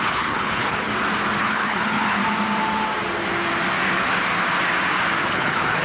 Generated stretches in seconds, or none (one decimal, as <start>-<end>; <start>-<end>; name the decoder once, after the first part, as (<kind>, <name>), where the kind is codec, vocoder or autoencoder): 0.0-0.9 (codec, HILCodec); 1.4-2.2; 5.3-5.8